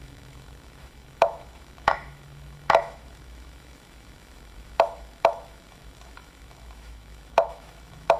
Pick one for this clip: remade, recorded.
remade